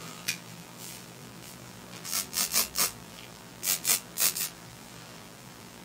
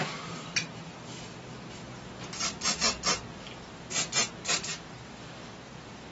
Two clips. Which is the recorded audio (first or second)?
second